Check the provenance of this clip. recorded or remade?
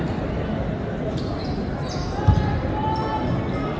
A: recorded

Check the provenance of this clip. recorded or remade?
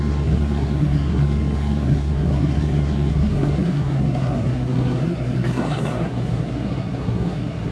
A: remade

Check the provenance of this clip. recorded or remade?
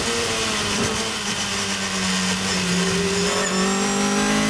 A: recorded